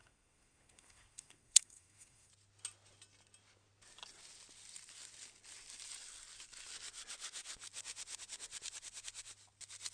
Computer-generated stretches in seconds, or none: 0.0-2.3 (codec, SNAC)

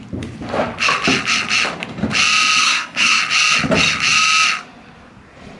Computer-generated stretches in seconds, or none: 2.6-3.2 (codec, SNAC)

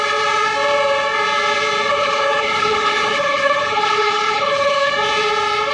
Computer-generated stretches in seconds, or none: 1.9-4.9 (codec, HILCodec)